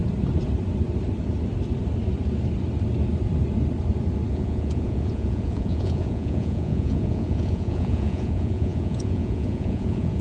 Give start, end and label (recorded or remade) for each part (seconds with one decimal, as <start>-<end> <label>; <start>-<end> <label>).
0.0-4.3 recorded; 4.3-10.2 remade